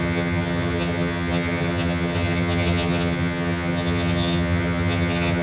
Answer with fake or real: fake